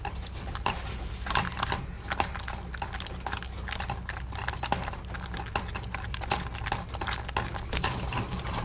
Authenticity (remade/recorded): recorded